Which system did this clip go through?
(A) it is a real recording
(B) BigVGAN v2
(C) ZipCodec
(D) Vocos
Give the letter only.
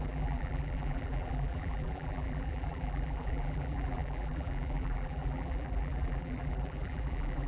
B